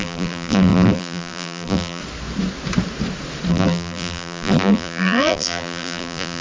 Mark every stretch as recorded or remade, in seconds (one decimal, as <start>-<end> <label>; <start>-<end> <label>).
0.0-2.0 remade; 2.0-3.5 recorded; 3.5-6.4 remade